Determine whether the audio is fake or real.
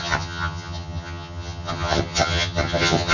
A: fake